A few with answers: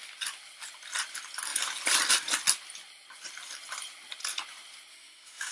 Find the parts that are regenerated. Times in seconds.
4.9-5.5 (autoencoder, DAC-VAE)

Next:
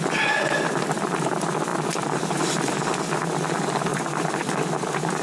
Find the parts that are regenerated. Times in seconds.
3.9-4.5 (vocoder, BigVGAN v2)

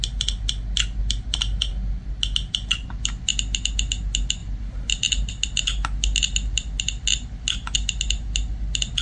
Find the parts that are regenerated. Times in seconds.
none

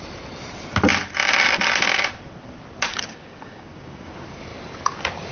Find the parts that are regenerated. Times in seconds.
2.9-4.1 (codec, DAC)

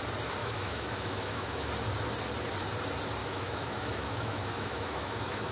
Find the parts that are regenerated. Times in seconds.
0.4-1.7 (autoencoder, DAC-VAE); 3.2-5.5